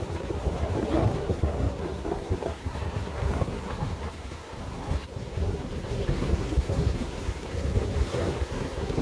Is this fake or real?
fake